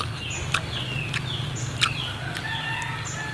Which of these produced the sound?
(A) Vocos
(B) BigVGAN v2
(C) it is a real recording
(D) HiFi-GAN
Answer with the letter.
C